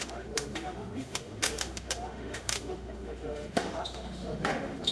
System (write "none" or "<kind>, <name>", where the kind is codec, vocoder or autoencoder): autoencoder, DAC-VAE